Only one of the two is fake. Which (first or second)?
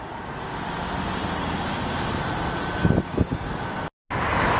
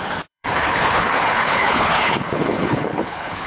second